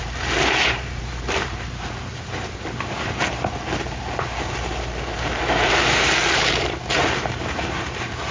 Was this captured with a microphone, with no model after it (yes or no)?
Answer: no